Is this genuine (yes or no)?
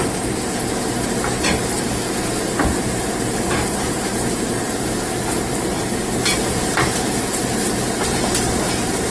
no